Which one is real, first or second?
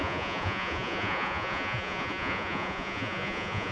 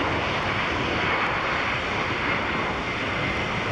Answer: second